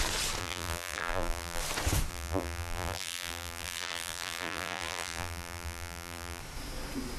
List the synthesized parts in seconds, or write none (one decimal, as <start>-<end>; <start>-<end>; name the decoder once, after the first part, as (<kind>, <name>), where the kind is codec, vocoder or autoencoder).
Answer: 0.4-1.6 (vocoder, BigVGAN v2); 2.1-6.4